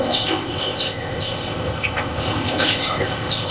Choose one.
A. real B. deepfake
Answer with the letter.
B